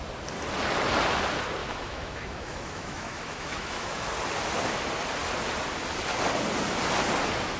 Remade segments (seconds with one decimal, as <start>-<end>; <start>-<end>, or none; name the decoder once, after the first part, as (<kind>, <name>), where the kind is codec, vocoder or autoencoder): 1.6-4.1 (autoencoder, DAC-VAE)